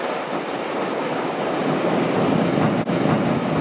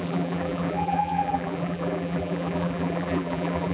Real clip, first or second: first